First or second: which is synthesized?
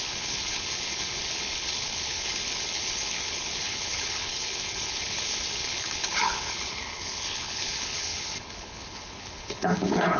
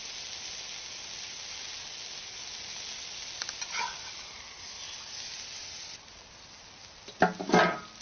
first